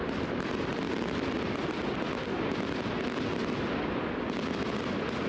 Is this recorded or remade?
recorded